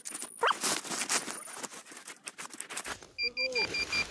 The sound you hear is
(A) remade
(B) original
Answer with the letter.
B